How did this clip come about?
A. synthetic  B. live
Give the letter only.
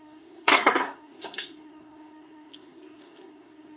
A